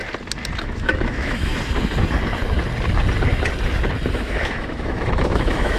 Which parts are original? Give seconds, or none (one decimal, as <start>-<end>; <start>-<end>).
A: 0.0-0.6; 1.5-4.1

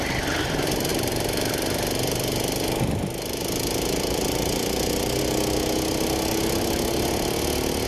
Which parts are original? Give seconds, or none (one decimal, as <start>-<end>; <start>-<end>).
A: 0.0-0.9; 5.2-7.9

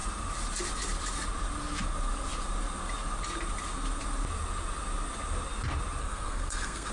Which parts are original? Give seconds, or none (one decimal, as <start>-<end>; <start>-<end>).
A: 0.0-6.0